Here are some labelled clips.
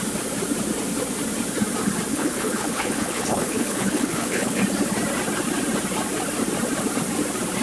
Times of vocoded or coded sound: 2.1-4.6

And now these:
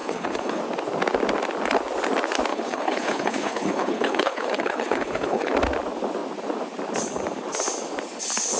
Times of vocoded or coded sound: 0.0-0.6; 2.5-5.5

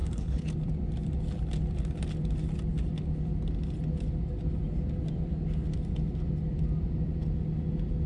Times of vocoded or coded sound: 0.0-0.5

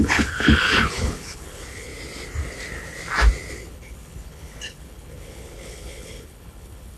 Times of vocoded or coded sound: 0.0-1.9; 3.5-7.0